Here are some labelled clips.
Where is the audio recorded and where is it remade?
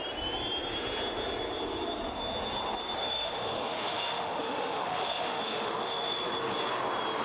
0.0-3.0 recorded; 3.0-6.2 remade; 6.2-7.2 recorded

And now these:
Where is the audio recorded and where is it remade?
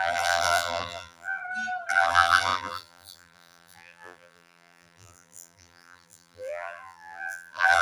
0.0-1.4 remade; 1.4-1.9 recorded; 1.9-7.8 remade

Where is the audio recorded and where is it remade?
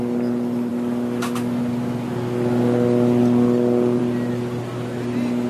0.0-5.5 recorded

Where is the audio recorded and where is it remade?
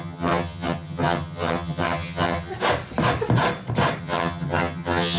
0.0-2.5 remade; 2.5-4.0 recorded; 4.0-5.2 remade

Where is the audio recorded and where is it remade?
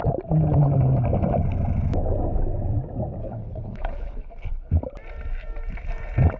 0.0-3.2 recorded; 3.2-4.7 remade; 4.7-6.4 recorded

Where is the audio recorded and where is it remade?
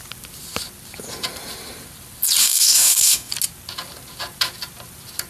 0.0-2.4 recorded; 2.4-3.3 remade; 3.3-5.3 recorded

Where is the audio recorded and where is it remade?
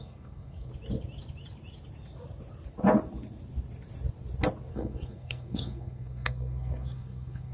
0.0-0.7 remade; 0.7-4.7 recorded; 4.7-7.5 remade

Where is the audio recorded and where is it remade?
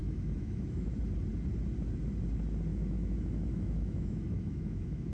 0.0-0.9 remade; 0.9-2.7 recorded; 2.7-5.1 remade